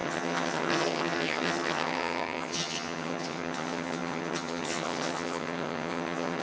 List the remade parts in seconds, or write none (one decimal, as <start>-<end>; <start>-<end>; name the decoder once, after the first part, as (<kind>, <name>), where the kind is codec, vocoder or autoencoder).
0.0-6.4 (vocoder, HiFi-GAN)